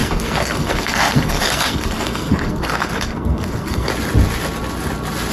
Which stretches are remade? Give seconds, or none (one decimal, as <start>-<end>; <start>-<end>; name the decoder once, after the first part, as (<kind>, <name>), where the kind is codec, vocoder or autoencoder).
0.0-3.9 (codec, SNAC)